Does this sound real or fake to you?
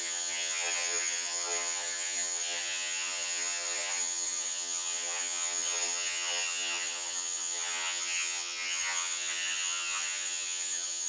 fake